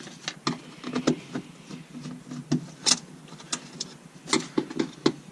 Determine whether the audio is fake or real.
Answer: real